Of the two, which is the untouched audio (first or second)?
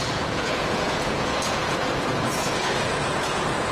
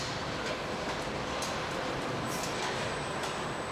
second